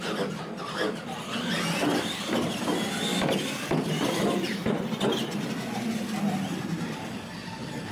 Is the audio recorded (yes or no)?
yes